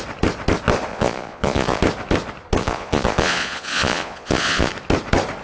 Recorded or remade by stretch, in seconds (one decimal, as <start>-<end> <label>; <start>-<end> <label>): 0.0-0.9 recorded; 0.9-1.8 remade; 1.8-2.6 recorded; 2.6-4.7 remade; 4.7-5.4 recorded